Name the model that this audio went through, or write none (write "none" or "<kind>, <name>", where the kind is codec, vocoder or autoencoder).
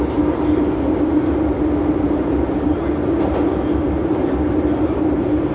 none